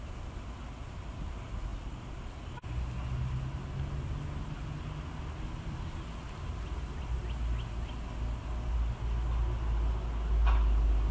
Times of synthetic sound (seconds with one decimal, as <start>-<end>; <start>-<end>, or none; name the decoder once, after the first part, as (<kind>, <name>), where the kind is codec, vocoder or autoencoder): none